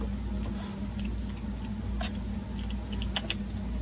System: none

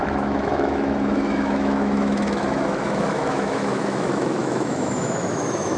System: autoencoder, DAC-VAE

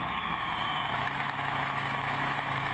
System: autoencoder, DAC-VAE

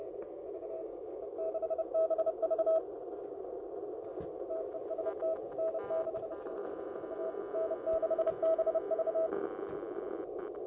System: none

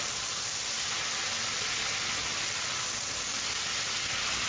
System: none